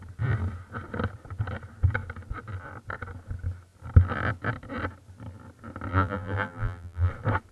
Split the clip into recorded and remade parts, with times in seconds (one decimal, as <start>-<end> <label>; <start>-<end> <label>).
0.0-5.9 recorded; 5.9-7.1 remade; 7.1-7.5 recorded